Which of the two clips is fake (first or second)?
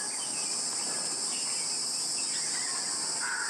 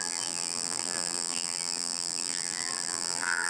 second